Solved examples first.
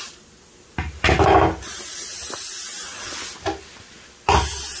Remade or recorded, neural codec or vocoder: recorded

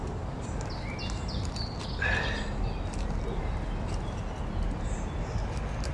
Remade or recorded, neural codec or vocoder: recorded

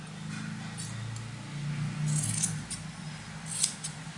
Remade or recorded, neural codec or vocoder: recorded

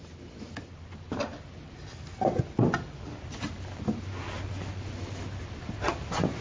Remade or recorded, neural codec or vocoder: recorded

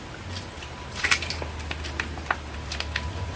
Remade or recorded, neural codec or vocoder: remade, vocoder, BigVGAN v2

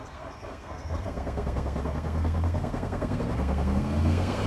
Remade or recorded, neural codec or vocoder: remade, codec, SNAC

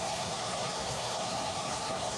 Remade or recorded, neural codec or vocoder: remade, codec, SNAC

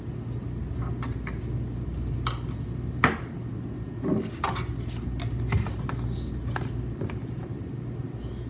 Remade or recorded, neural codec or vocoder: recorded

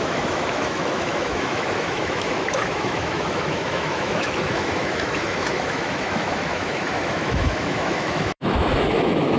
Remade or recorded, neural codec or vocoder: remade, autoencoder, DAC-VAE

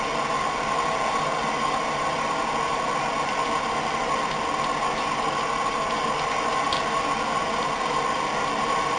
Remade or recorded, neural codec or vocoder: recorded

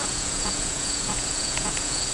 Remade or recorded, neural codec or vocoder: remade, vocoder, Vocos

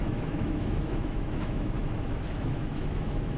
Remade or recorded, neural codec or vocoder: remade, autoencoder, DAC-VAE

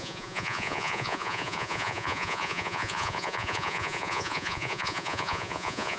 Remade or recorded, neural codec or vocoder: remade, vocoder, Vocos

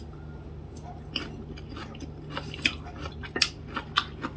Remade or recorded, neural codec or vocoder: recorded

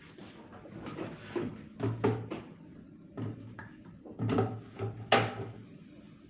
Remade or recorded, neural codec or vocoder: recorded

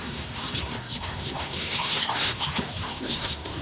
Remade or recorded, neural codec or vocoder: remade, codec, SNAC